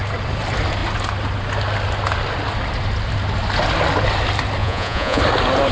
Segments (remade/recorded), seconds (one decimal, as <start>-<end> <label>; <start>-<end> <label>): 0.0-4.6 recorded; 4.6-5.2 remade; 5.2-5.7 recorded